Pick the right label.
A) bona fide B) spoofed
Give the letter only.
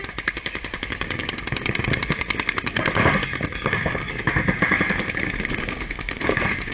B